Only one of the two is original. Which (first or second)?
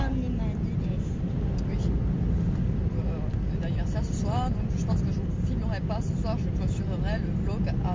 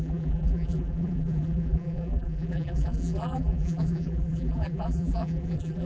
first